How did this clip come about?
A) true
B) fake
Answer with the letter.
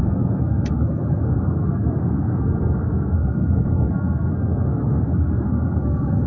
B